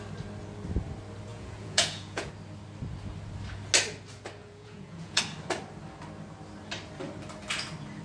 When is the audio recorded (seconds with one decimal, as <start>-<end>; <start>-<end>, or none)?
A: 0.0-1.3; 2.3-4.4; 5.2-8.0